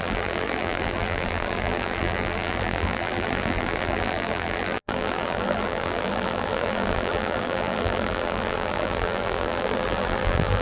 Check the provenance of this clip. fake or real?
fake